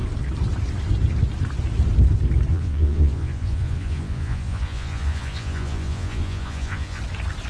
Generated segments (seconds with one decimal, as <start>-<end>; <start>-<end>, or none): 2.5-7.0